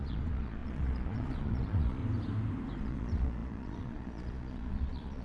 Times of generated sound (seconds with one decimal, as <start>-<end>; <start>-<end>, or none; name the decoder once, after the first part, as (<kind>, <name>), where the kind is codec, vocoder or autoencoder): 0.0-2.0 (vocoder, Vocos); 2.8-5.2